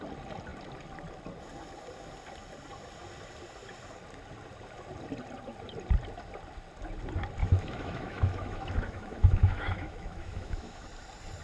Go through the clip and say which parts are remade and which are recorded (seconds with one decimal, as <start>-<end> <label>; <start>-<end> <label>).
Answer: 0.0-7.4 recorded; 7.4-10.8 remade; 10.8-11.4 recorded